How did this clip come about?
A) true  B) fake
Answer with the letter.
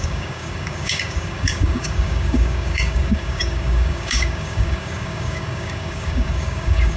B